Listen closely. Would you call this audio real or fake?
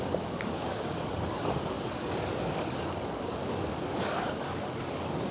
fake